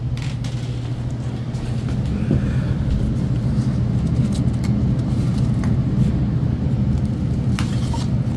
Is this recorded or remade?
recorded